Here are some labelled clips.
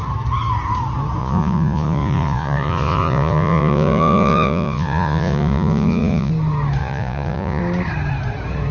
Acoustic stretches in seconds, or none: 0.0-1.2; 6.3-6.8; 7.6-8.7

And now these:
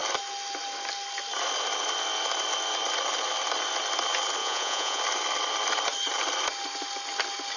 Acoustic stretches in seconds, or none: 0.0-4.4; 5.0-7.6

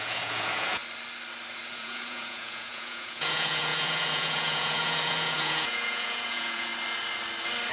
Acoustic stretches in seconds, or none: 0.8-1.7; 6.7-7.7

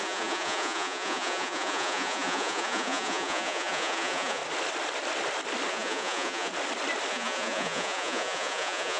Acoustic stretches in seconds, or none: 4.4-5.7; 6.5-7.1

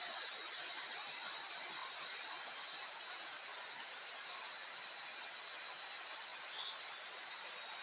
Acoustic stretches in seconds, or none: 0.0-7.8